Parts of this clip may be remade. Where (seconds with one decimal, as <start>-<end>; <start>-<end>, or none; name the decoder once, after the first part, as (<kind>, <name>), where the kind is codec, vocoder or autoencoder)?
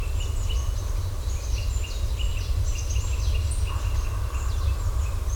none